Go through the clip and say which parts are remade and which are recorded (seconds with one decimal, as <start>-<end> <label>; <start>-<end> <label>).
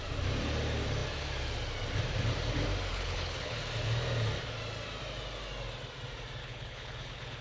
0.0-2.9 recorded; 2.9-3.6 remade; 3.6-6.4 recorded; 6.4-7.4 remade